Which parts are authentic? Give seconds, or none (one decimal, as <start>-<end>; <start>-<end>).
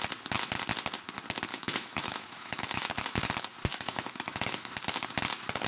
0.0-1.5; 2.9-3.7; 4.7-5.7